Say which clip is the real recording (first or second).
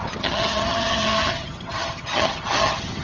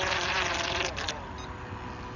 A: second